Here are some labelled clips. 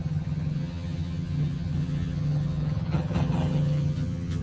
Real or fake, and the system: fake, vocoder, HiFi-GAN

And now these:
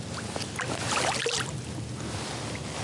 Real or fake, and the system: real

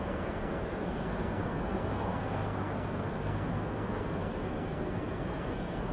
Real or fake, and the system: fake, codec, SNAC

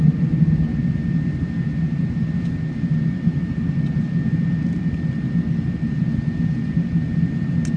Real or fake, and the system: real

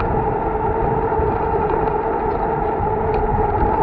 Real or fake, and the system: fake, vocoder, BigVGAN v2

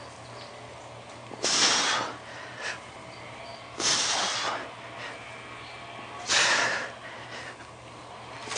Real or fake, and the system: real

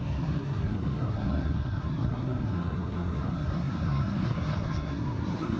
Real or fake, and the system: fake, codec, SNAC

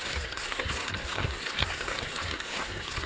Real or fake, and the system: fake, codec, SNAC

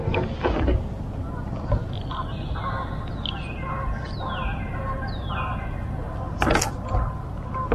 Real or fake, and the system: real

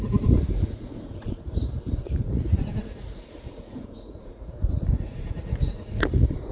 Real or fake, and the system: fake, vocoder, Vocos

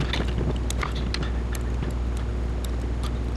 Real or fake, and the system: real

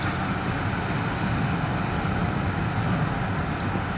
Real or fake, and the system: real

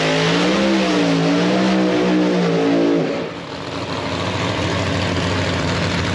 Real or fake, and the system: real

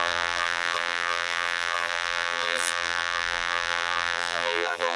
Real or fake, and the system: fake, vocoder, BigVGAN v2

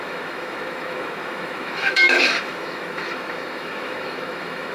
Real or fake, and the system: fake, autoencoder, DAC-VAE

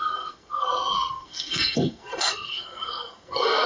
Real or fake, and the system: fake, codec, SNAC